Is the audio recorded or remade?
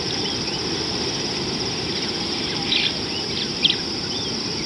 remade